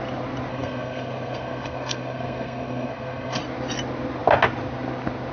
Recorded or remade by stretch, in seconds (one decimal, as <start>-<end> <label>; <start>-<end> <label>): 0.0-0.5 recorded; 0.5-3.4 remade; 3.4-5.3 recorded